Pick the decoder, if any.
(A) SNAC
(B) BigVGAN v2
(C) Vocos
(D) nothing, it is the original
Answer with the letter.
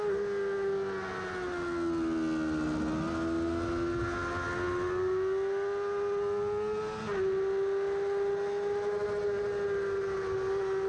D